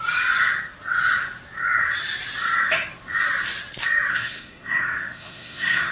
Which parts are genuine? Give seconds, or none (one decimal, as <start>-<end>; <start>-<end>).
0.0-4.1